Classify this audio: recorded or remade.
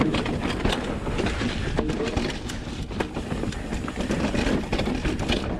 recorded